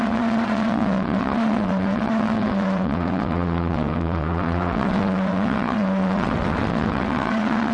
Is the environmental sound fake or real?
fake